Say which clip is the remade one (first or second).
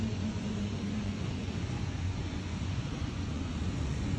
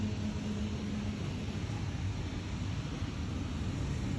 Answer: first